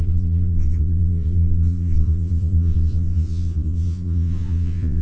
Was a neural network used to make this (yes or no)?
yes